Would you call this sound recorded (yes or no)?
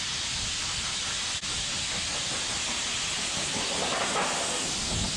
yes